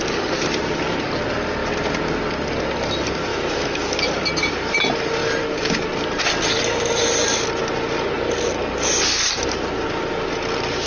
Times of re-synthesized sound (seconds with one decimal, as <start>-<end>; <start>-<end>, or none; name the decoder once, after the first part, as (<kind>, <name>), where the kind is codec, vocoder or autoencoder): 3.3-4.1 (autoencoder, DAC-VAE)

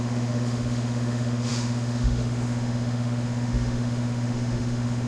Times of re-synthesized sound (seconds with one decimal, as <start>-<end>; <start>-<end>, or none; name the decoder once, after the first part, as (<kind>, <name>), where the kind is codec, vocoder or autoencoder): 0.0-5.1 (autoencoder, DAC-VAE)